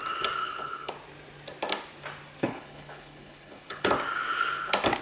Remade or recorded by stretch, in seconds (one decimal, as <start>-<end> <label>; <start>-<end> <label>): 0.0-0.4 recorded; 0.4-0.9 remade; 0.9-2.4 recorded; 2.4-3.9 remade; 3.9-5.0 recorded